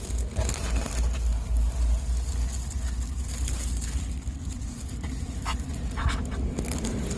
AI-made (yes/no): no